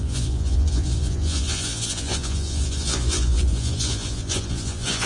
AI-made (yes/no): yes